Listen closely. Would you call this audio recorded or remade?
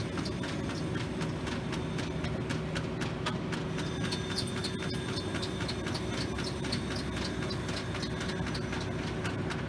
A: recorded